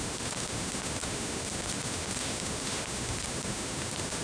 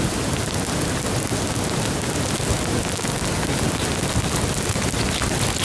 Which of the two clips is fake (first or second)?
first